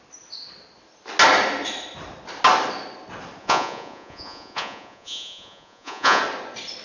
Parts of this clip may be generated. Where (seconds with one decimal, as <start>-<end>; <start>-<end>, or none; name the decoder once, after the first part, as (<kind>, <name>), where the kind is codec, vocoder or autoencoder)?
3.4-6.2 (vocoder, Vocos)